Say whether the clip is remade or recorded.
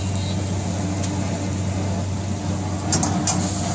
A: recorded